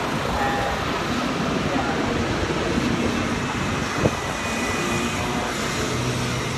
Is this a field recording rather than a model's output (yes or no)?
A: yes